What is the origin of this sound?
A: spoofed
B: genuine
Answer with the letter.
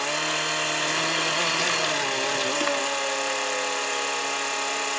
B